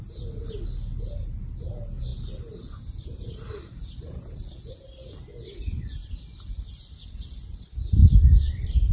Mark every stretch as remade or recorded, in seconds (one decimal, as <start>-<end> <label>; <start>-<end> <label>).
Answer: 0.0-6.0 recorded; 6.0-7.1 remade; 7.1-8.0 recorded; 8.0-8.9 remade